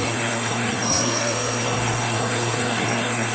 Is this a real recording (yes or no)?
no